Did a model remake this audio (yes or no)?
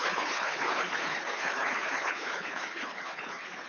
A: yes